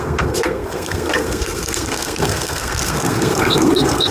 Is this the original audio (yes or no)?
no